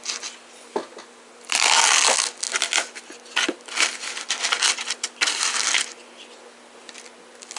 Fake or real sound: real